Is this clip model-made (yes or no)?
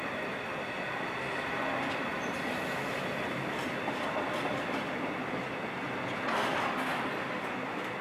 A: no